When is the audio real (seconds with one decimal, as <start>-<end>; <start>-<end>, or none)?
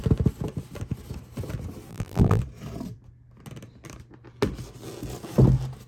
0.0-1.9; 2.4-5.9